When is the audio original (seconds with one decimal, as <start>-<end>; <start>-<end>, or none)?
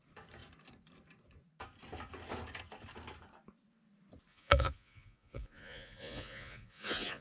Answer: 0.0-4.3